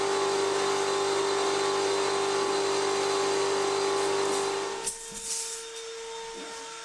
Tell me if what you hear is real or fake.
real